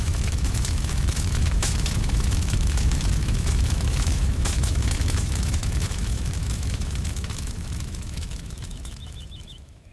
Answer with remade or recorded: remade